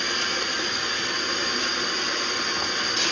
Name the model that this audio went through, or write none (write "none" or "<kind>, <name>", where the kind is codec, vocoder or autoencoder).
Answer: none